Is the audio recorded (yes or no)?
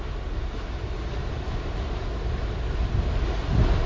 yes